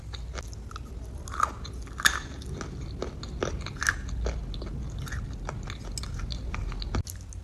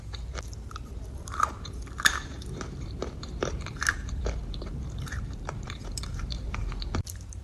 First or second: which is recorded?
first